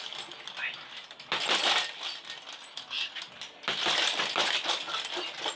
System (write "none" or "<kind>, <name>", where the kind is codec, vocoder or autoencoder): none